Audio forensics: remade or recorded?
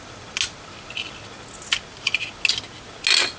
recorded